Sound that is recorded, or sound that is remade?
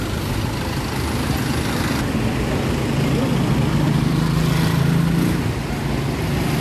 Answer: recorded